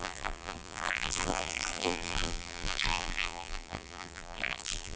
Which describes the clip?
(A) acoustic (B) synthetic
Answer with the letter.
B